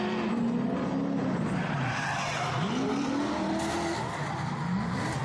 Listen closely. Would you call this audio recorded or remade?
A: recorded